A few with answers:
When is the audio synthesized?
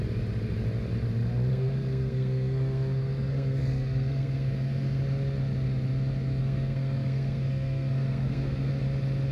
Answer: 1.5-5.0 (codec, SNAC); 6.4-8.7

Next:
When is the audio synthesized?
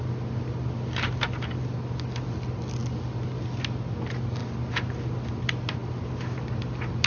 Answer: none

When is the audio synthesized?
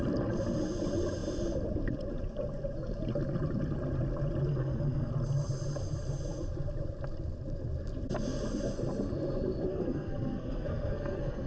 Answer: 4.5-5.1 (codec, SNAC); 9.7-11.5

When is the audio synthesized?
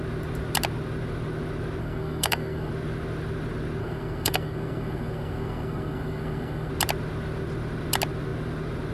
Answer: 1.8-2.7 (codec, SNAC); 3.8-6.7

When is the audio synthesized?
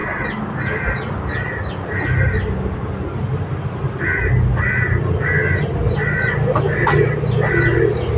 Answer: none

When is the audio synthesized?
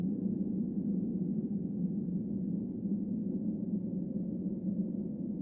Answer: none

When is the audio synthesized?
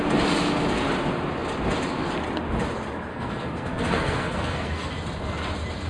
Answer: 3.1-4.9 (codec, SNAC)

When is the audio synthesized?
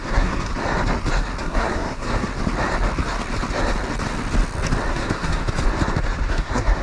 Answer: 0.0-0.5 (codec, SNAC); 1.4-2.3; 4.9-5.4; 6.3-6.8